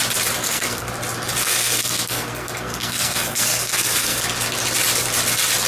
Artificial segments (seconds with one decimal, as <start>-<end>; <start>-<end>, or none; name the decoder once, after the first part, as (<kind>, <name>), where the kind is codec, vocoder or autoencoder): 0.4-0.9 (codec, SNAC); 1.4-4.2